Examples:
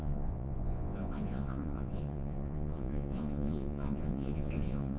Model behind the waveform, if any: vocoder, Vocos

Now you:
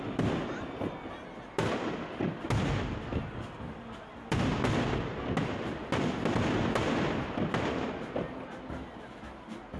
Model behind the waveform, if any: none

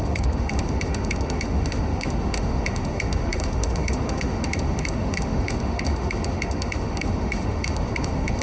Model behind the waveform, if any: autoencoder, DAC-VAE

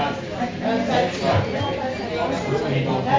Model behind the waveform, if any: none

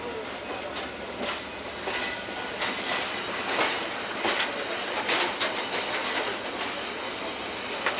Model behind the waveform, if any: none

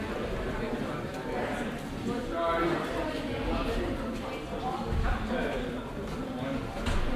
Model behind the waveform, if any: none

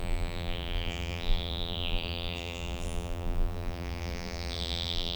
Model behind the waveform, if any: vocoder, BigVGAN v2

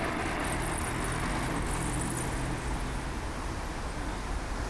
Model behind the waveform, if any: none